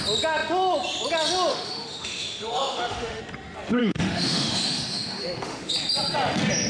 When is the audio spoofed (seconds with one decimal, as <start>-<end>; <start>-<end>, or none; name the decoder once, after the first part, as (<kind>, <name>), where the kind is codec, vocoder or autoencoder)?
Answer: 1.5-3.2 (autoencoder, DAC-VAE); 3.8-5.7